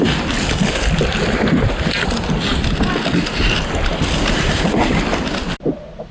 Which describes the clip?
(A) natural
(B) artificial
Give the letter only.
A